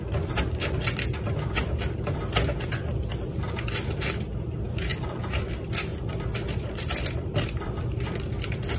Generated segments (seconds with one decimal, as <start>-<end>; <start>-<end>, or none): 4.9-5.5; 5.9-8.8